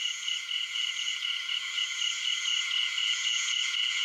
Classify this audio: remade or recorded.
remade